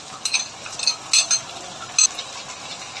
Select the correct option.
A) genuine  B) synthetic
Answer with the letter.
A